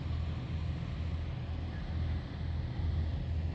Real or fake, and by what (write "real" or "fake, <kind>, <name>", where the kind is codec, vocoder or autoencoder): real